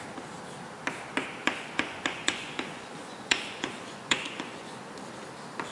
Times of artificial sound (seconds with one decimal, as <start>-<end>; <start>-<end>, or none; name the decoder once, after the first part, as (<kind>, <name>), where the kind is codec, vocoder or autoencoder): 1.4-4.8 (vocoder, Vocos)